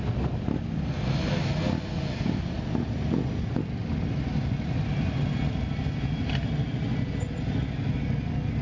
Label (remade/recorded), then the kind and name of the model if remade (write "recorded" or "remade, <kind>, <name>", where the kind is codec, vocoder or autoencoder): recorded